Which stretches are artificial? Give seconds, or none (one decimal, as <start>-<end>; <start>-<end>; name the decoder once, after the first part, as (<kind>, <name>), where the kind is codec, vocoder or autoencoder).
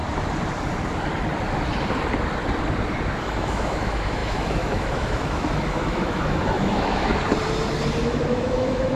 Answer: 3.2-7.1 (autoencoder, DAC-VAE); 8.0-9.0